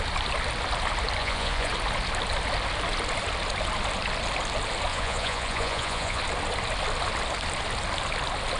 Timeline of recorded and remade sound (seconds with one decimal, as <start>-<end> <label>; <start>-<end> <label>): 0.0-1.2 recorded; 1.2-1.7 remade; 1.7-4.9 recorded; 4.9-6.2 remade; 6.2-8.6 recorded